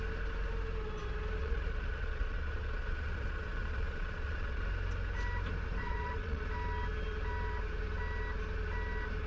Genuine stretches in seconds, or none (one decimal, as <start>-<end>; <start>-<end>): 0.0-1.4; 4.6-5.8; 6.4-9.3